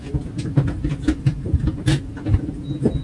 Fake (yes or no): no